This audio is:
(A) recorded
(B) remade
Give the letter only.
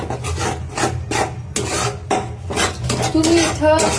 A